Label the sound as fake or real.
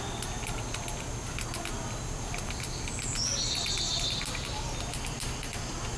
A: real